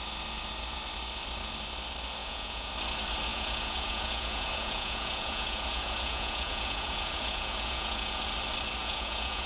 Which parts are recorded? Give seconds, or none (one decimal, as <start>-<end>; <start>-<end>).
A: 0.0-2.2; 2.7-3.3; 8.2-8.8